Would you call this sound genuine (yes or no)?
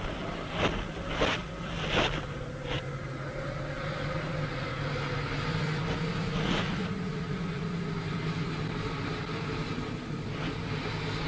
yes